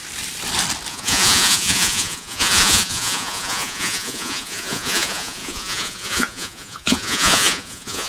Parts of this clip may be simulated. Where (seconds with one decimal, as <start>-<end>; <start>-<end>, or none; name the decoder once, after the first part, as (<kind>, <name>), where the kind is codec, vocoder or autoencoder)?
0.9-8.1 (vocoder, Vocos)

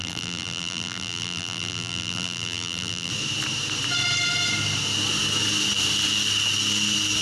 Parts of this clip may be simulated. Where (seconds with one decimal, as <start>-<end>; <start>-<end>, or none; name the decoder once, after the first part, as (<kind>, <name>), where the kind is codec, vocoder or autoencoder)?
0.0-3.1 (vocoder, BigVGAN v2)

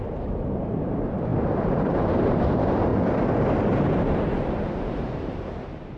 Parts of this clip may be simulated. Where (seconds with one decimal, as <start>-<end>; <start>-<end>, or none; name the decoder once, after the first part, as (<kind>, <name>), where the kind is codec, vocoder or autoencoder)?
0.0-2.9 (vocoder, BigVGAN v2); 4.3-6.0

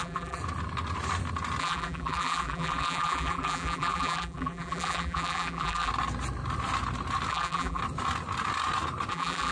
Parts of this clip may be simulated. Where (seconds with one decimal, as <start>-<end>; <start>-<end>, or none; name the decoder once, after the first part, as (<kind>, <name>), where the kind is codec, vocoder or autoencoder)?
0.0-0.4 (vocoder, BigVGAN v2); 1.6-5.9; 7.3-7.8; 9.1-9.5

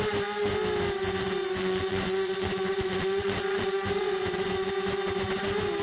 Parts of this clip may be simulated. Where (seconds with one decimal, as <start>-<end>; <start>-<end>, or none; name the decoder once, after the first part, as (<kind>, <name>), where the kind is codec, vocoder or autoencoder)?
1.6-4.7 (vocoder, Vocos)

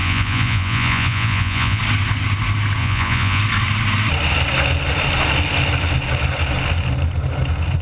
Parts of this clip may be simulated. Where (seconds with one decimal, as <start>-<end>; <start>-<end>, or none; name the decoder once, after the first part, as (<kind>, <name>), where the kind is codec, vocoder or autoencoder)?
0.0-1.8 (vocoder, Vocos); 2.8-3.4

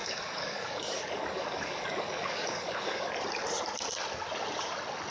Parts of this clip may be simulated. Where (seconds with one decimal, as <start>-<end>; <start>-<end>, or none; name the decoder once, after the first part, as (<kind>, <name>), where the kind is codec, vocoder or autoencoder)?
0.0-3.1 (codec, DAC)